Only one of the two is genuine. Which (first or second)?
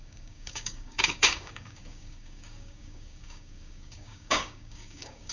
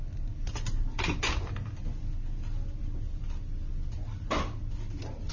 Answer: second